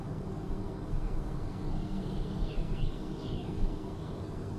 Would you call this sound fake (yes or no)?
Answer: yes